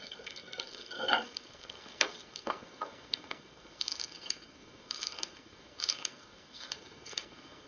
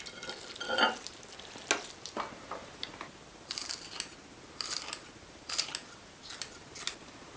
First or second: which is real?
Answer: second